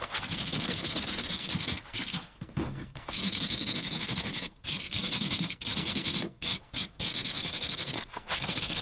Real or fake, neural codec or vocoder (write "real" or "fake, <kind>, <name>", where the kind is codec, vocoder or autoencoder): fake, codec, SNAC